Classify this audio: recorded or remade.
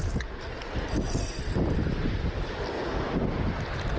recorded